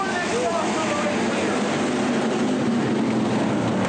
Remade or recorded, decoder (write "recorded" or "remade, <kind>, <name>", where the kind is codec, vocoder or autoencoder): recorded